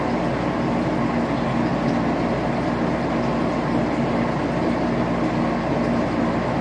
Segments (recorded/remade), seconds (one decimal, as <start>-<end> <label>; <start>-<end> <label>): 0.0-6.6 remade